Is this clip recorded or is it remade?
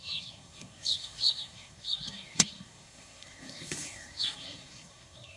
remade